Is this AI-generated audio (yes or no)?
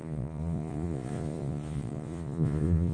yes